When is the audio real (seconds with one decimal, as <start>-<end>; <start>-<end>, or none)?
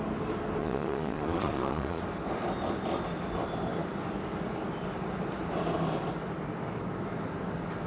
0.0-0.6; 2.0-7.9